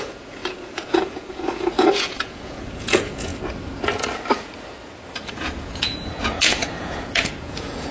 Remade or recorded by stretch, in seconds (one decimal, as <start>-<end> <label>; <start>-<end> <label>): 0.0-3.3 remade; 3.3-5.3 recorded; 5.3-7.9 remade